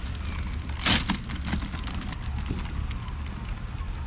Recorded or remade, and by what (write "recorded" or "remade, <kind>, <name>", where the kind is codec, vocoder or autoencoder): recorded